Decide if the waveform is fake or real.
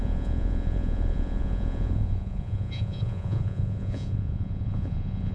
fake